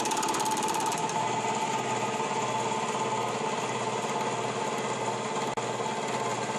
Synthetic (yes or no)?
no